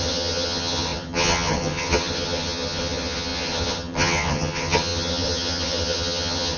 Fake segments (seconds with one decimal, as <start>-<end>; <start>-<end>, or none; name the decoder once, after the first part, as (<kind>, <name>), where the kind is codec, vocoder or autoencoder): 0.0-6.6 (vocoder, HiFi-GAN)